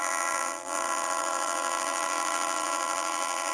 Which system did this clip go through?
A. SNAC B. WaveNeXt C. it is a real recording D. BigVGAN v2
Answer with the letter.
D